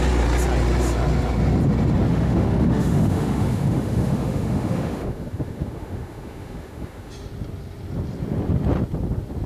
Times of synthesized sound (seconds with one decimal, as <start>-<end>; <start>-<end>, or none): 2.1-7.1